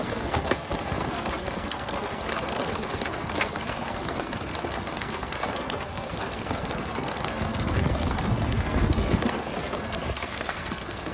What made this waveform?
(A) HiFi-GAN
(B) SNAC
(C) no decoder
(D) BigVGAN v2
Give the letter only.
B